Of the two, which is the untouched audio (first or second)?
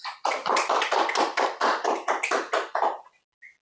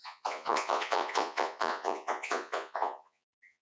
first